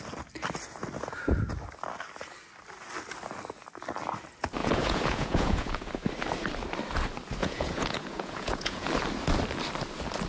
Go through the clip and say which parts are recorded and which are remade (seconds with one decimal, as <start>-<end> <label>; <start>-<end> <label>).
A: 0.0-4.6 recorded; 4.6-5.9 remade; 5.9-7.4 recorded; 7.4-8.9 remade; 8.9-10.3 recorded